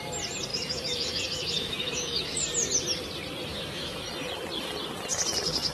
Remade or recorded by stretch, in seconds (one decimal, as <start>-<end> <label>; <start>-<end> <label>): 0.0-0.5 recorded; 0.5-2.4 remade; 2.4-3.5 recorded; 3.5-4.1 remade; 4.1-5.7 recorded